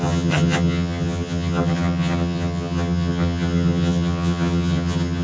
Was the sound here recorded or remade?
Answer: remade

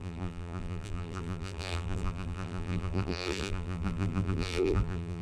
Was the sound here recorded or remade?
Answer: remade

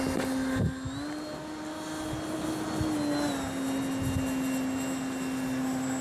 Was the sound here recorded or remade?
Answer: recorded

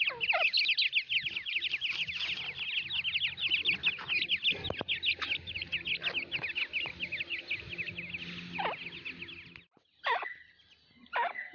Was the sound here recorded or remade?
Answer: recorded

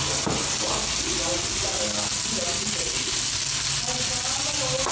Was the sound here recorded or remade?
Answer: recorded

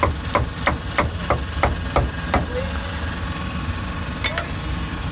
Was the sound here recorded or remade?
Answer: recorded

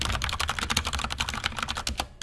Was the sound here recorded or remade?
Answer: recorded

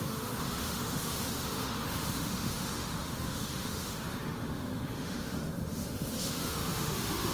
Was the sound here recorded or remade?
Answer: remade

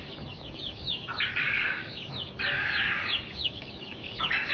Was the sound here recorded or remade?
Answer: remade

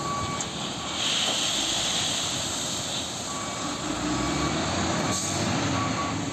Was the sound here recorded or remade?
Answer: recorded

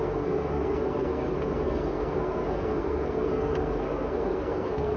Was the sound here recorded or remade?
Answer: remade